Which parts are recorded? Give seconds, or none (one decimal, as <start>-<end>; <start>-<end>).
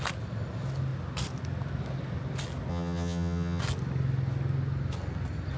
0.0-2.7; 3.6-5.6